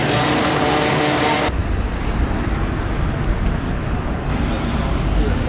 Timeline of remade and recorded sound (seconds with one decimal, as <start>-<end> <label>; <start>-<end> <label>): 0.0-5.5 recorded